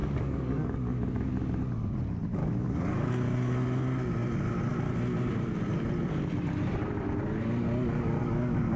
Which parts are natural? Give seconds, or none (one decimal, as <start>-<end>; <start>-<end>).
1.3-2.4; 3.1-8.2